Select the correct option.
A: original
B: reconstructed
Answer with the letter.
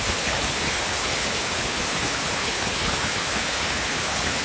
B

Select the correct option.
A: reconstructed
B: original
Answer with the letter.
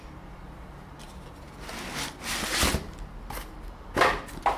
B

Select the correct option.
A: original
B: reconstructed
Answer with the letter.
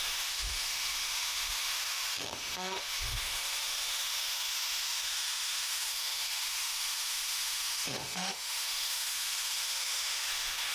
B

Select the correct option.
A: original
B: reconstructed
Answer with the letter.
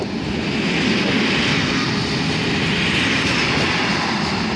A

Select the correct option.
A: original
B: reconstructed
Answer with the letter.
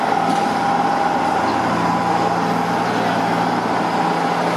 A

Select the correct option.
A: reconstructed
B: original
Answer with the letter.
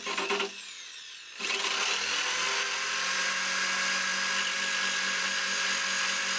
B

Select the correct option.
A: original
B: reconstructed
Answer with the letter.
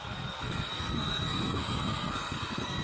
B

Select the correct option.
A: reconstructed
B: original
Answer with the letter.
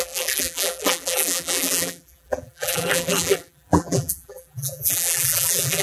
A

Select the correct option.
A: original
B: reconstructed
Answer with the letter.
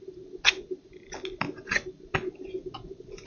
A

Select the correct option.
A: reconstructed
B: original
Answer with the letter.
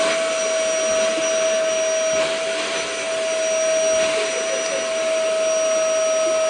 B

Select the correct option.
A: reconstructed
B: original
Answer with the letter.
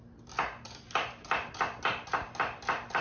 B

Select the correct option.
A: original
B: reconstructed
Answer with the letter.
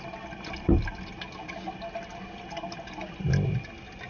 A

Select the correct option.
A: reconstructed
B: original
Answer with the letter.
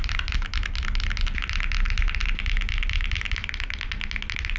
B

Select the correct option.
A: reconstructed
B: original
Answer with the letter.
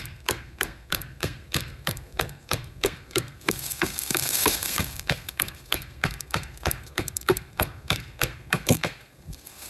A